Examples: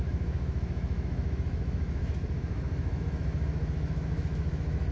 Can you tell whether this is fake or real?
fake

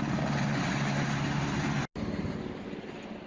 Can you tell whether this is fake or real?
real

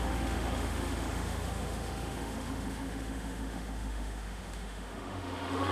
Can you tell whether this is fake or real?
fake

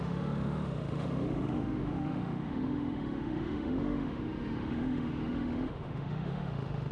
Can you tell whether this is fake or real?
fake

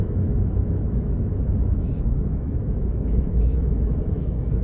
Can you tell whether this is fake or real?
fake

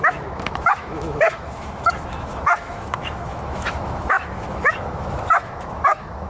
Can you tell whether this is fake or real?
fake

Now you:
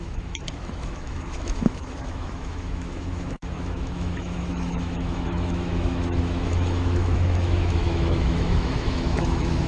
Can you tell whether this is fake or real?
fake